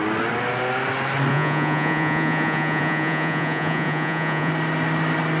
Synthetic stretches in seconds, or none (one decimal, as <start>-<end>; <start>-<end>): 1.3-4.5